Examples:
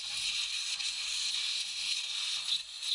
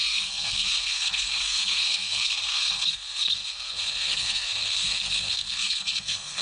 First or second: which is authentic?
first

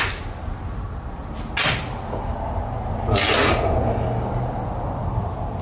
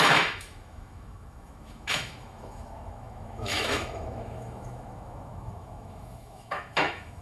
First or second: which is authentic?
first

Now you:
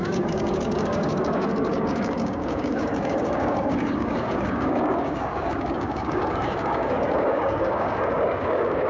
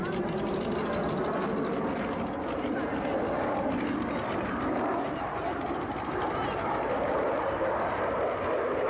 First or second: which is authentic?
second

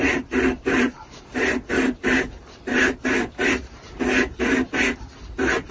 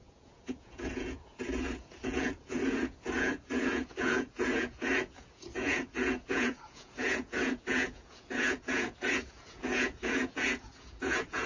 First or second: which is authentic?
first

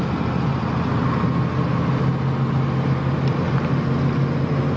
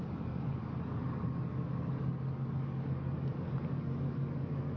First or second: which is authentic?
first